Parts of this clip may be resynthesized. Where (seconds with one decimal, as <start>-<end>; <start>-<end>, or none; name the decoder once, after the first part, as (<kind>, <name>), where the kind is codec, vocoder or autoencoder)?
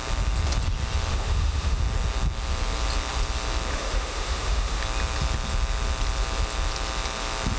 1.1-1.8 (autoencoder, DAC-VAE); 3.7-4.8